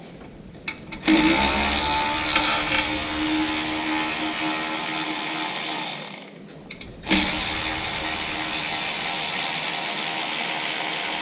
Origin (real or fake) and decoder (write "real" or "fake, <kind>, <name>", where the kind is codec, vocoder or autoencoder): real